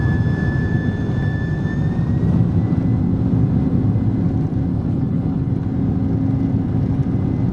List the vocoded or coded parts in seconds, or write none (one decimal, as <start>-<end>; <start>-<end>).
4.7-5.5